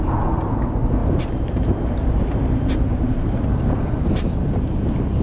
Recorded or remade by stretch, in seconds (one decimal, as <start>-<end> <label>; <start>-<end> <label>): 0.0-1.0 recorded; 1.0-4.1 remade; 4.1-5.2 recorded